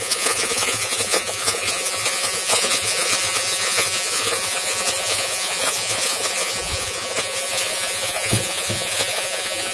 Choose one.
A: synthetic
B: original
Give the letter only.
A